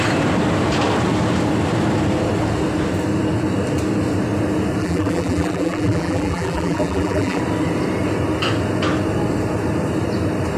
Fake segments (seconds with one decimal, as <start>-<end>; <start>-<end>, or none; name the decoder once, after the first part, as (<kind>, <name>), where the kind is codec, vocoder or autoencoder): 4.8-7.4 (vocoder, BigVGAN v2)